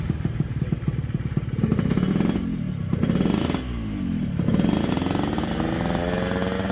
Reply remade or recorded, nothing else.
recorded